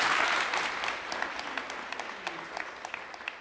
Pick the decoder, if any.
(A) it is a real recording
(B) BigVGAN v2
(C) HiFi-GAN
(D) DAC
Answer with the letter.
A